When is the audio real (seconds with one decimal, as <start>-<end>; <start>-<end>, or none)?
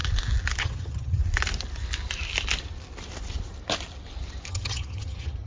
0.0-0.6; 1.2-4.5